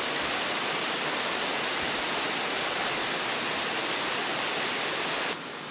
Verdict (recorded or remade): recorded